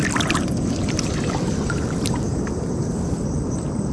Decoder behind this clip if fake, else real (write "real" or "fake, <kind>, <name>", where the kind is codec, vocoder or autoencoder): real